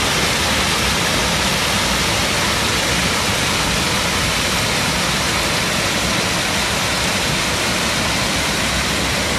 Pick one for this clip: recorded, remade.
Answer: recorded